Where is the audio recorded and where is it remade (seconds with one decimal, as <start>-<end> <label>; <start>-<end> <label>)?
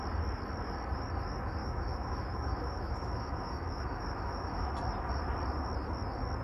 0.0-1.6 recorded; 1.6-4.7 remade; 4.7-6.4 recorded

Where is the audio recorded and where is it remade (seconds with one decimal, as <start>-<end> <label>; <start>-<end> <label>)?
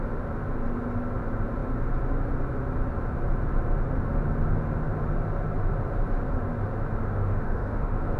0.0-7.0 recorded; 7.0-8.2 remade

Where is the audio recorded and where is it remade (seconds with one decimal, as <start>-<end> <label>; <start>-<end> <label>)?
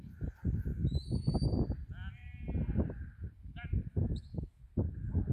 0.0-0.7 recorded; 0.7-1.3 remade; 1.3-3.9 recorded; 3.9-4.6 remade; 4.6-5.3 recorded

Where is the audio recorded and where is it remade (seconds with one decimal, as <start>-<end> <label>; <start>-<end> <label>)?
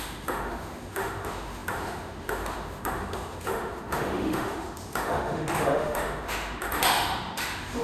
0.0-7.8 remade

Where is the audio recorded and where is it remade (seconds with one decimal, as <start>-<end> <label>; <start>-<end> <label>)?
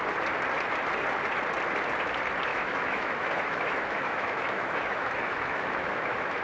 0.0-2.5 recorded; 2.5-6.4 remade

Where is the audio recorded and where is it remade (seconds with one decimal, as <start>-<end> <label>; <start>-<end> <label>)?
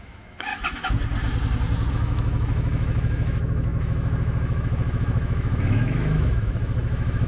0.0-0.5 remade; 0.5-1.9 recorded; 1.9-7.3 remade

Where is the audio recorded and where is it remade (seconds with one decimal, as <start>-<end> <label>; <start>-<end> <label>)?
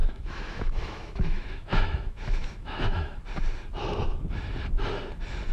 0.0-3.2 remade; 3.2-5.5 recorded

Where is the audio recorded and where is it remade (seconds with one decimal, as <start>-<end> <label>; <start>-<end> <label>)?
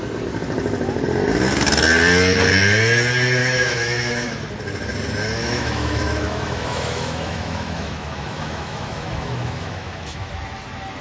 0.0-3.4 recorded; 3.4-4.5 remade; 4.5-5.4 recorded; 5.4-10.3 remade; 10.3-11.0 recorded